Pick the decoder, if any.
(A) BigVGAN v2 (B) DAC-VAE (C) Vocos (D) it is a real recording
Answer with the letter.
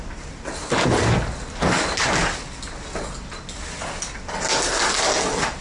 D